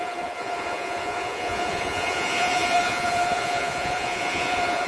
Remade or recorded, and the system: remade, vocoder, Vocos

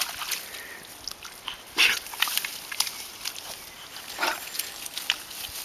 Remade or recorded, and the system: recorded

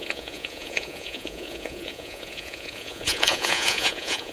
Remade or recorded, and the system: remade, vocoder, Vocos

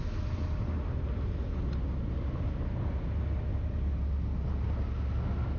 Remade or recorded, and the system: recorded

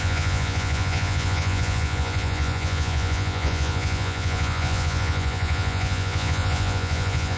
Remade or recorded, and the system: remade, vocoder, Vocos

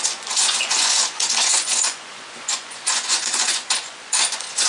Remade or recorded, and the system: remade, vocoder, Vocos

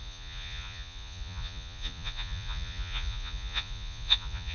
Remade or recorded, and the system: remade, vocoder, Vocos